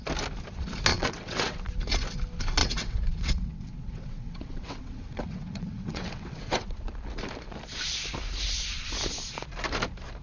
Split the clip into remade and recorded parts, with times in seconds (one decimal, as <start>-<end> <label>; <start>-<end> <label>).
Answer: 0.0-0.9 recorded; 0.9-1.7 remade; 1.7-2.6 recorded; 2.6-6.9 remade; 6.9-10.2 recorded